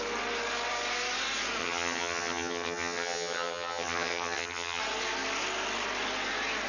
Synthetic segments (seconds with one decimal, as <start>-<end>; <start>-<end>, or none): 1.6-4.8